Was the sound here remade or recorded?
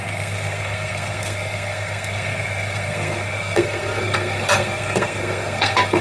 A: remade